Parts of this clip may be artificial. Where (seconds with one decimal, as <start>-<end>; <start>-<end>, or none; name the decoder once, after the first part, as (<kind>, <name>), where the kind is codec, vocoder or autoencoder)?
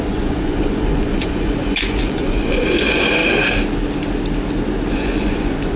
0.0-3.2 (vocoder, Vocos); 4.9-5.8